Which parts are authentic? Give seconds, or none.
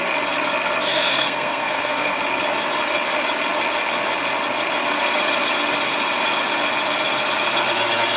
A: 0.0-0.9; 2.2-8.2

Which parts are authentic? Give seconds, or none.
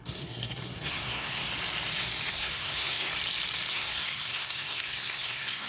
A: 1.5-2.3; 3.1-3.7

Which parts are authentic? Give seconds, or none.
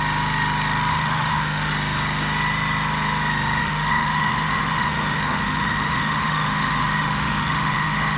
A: 0.0-0.9; 1.7-3.6